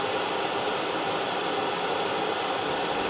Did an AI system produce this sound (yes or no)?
no